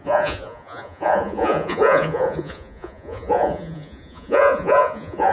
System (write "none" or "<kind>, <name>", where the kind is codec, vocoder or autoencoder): vocoder, Vocos